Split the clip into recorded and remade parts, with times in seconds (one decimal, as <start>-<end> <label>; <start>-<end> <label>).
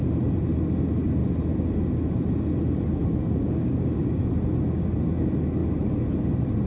0.0-3.0 recorded; 3.0-4.3 remade; 4.3-6.7 recorded